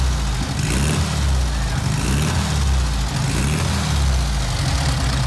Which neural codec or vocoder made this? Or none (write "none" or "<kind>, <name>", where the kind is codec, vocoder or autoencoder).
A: none